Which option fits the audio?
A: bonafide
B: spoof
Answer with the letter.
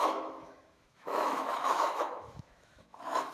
B